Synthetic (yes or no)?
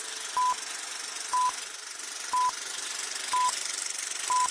no